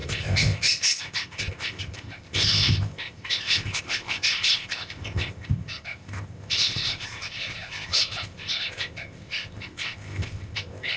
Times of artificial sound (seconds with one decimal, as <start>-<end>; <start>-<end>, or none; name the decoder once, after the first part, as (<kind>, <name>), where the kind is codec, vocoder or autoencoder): 0.0-11.0 (codec, ZipCodec)